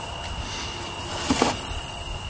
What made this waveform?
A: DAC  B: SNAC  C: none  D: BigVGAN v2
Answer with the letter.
C